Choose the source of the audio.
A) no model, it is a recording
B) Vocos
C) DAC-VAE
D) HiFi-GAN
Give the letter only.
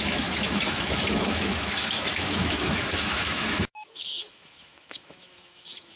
C